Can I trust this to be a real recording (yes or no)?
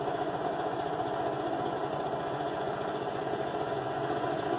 no